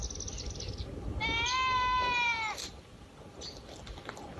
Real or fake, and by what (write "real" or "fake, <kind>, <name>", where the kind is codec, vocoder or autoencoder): real